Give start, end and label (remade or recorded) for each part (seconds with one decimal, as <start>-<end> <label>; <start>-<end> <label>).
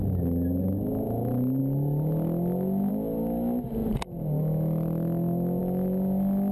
0.0-6.5 recorded